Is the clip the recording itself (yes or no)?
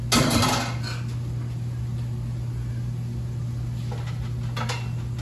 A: yes